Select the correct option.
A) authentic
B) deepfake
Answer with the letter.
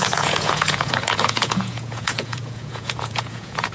B